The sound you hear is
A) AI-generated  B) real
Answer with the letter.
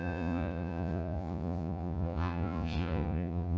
A